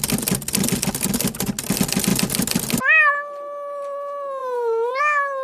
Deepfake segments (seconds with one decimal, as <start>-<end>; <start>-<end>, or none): 4.4-5.0